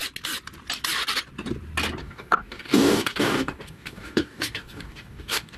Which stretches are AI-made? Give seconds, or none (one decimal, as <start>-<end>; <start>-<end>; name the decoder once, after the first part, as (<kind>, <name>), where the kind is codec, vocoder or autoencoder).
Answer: 2.0-5.6 (codec, DAC)